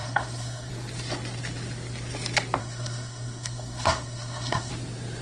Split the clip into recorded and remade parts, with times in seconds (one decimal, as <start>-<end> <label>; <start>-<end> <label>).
0.0-0.7 remade; 0.7-2.6 recorded; 2.6-4.7 remade; 4.7-5.2 recorded